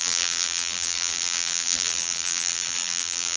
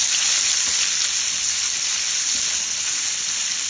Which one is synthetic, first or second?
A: first